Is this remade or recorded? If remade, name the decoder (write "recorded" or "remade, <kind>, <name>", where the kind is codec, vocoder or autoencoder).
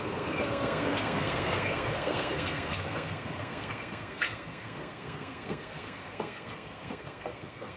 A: remade, codec, SNAC